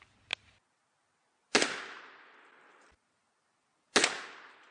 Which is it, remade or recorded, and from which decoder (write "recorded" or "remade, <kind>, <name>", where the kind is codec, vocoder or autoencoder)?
recorded